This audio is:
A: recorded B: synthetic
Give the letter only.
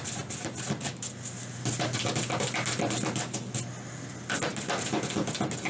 A